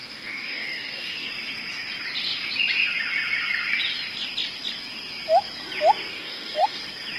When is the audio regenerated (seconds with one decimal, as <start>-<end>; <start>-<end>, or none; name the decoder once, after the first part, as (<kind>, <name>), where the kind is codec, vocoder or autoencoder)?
0.0-1.3 (codec, DAC); 6.1-6.8